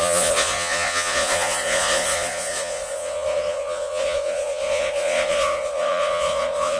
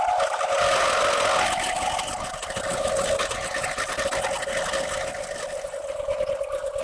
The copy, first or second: first